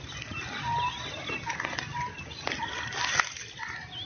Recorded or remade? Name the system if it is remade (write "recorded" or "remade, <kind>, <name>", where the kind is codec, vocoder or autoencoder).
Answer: recorded